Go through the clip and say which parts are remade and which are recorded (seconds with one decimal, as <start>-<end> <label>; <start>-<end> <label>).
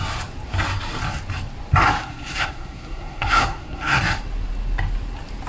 0.0-2.0 recorded; 2.0-4.0 remade; 4.0-5.5 recorded